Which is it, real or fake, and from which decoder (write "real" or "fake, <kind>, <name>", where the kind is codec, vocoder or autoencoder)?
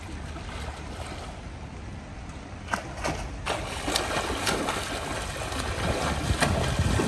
real